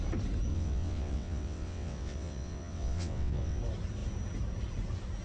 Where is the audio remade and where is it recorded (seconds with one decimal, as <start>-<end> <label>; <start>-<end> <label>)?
0.0-0.5 recorded; 0.5-3.6 remade; 3.6-5.2 recorded